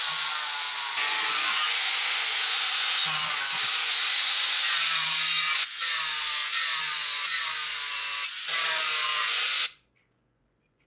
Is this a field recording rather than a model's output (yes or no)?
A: no